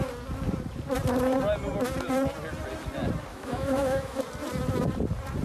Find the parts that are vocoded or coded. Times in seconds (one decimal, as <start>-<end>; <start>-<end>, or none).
3.3-4.2